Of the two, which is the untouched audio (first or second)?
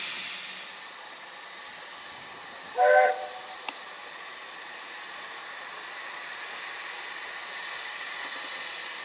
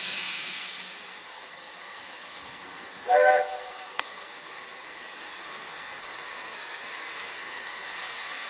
first